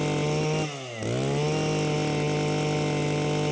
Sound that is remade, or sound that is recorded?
recorded